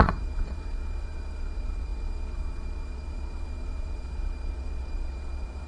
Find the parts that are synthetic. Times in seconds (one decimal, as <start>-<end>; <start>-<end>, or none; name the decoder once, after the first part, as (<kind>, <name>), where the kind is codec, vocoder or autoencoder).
0.0-5.7 (vocoder, Vocos)

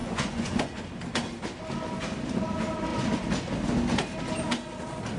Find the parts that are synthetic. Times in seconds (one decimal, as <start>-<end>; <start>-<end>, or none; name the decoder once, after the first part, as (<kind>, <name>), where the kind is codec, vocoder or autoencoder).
0.0-0.8 (vocoder, Vocos)

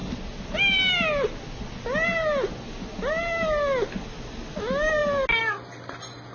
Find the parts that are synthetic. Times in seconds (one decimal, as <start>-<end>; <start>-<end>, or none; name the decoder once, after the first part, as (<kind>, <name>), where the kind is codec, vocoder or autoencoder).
none